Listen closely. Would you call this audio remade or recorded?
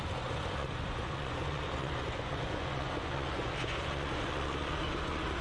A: remade